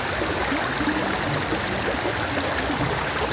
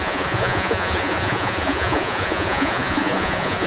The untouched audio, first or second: first